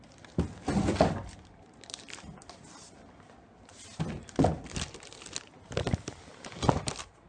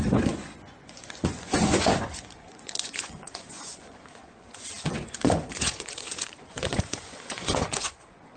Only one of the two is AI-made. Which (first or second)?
second